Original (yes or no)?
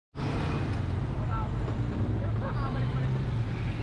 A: yes